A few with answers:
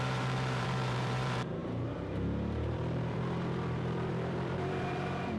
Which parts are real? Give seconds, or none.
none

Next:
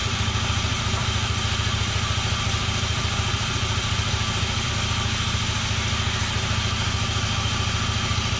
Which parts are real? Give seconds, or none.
4.7-8.4

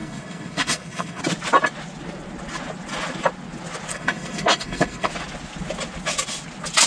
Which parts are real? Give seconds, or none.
1.2-3.9; 5.1-6.9

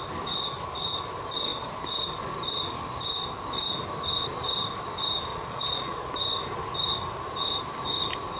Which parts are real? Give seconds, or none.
0.0-5.3; 6.1-8.4

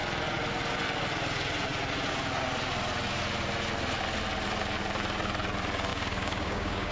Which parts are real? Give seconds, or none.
0.0-5.9

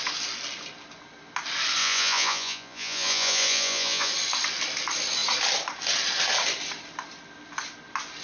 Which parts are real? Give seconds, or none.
0.0-1.8; 4.1-8.2